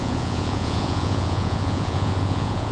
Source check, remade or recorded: remade